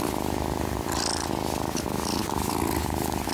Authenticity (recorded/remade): recorded